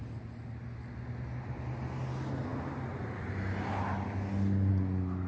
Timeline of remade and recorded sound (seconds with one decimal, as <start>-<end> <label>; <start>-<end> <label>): 0.0-5.3 recorded